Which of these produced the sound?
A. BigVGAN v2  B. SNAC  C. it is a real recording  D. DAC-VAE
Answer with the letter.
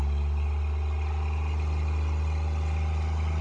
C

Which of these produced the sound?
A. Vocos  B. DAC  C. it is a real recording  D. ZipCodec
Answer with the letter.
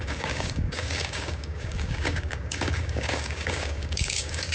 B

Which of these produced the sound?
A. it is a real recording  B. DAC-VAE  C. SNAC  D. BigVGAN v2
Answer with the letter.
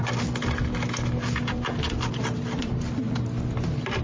A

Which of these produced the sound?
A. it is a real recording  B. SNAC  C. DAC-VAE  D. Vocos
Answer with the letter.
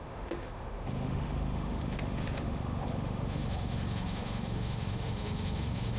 C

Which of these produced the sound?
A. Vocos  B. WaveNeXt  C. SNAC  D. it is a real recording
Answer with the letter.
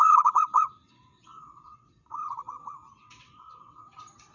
B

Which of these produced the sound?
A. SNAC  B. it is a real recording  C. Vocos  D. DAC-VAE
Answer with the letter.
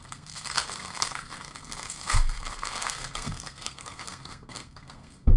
A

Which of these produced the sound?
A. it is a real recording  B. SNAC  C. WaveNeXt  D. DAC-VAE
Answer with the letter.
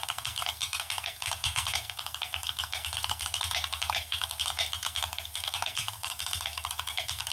B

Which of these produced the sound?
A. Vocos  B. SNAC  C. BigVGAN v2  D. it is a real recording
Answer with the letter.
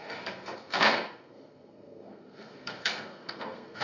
B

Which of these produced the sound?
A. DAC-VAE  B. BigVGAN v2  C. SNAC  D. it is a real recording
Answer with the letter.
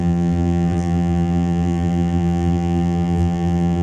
B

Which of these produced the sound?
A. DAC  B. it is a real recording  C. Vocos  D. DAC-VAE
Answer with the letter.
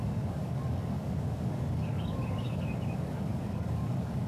A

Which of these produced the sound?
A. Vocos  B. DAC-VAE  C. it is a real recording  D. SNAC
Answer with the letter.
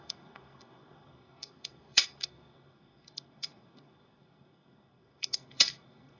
D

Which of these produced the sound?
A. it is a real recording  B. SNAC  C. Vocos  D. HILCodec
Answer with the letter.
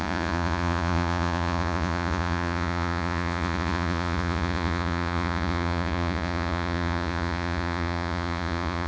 C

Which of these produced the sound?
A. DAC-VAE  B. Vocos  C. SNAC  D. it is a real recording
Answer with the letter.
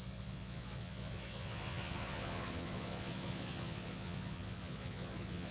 B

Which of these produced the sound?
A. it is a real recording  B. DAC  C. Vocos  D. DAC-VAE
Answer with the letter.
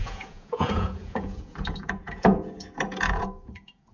C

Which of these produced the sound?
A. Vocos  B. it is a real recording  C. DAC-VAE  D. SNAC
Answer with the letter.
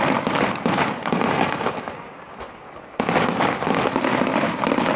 B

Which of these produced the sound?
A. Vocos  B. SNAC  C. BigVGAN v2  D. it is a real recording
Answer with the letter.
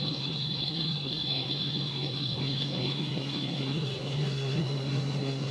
B